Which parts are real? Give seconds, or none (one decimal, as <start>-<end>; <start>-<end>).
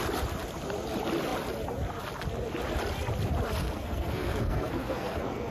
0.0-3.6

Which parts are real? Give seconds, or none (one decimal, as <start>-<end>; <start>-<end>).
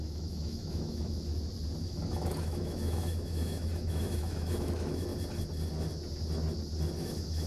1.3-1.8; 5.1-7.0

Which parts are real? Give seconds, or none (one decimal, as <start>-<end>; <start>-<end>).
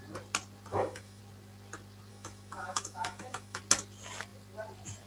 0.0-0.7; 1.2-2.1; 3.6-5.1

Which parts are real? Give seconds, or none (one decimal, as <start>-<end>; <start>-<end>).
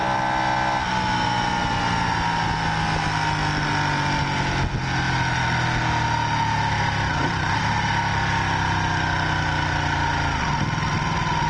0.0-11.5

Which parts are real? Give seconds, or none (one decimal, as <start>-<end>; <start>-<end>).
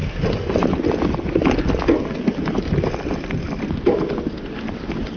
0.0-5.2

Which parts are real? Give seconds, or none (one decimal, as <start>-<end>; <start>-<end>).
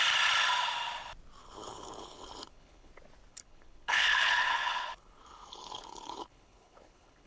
0.0-1.4; 2.9-3.3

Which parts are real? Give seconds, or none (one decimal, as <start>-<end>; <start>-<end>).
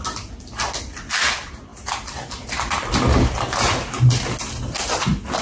0.0-5.4